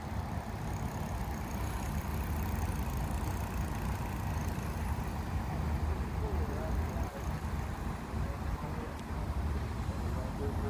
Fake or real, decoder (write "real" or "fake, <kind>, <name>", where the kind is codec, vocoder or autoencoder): real